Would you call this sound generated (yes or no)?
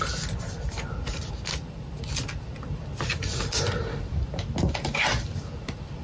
no